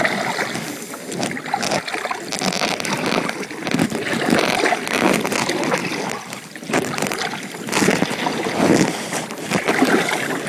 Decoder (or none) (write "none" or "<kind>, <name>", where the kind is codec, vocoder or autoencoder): none